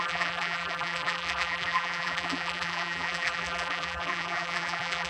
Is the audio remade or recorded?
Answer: remade